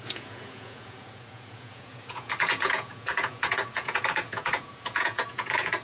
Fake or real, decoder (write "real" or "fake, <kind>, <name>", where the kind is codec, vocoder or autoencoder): fake, vocoder, Vocos